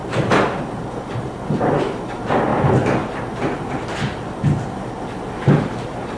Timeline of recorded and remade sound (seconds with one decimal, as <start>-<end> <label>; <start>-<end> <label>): 0.0-6.2 recorded